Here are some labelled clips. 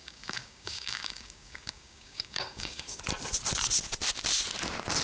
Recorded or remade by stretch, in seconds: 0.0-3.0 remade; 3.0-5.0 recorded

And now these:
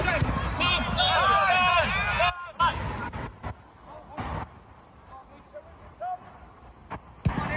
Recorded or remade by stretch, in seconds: 0.0-7.6 recorded

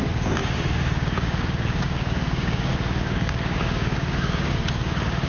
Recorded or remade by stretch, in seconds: 0.0-5.3 remade

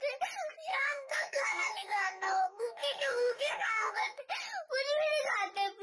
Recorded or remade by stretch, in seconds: 0.0-0.7 recorded; 0.7-4.2 remade; 4.2-5.8 recorded

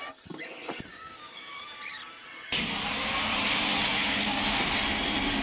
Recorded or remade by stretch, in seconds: 0.0-0.9 recorded; 0.9-1.6 remade; 1.6-3.9 recorded; 3.9-4.4 remade; 4.4-5.4 recorded

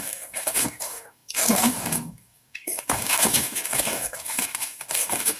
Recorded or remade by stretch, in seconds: 0.0-5.4 remade

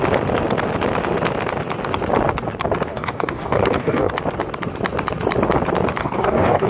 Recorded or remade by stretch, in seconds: 0.0-2.9 recorded; 2.9-4.1 remade; 4.1-6.0 recorded; 6.0-6.7 remade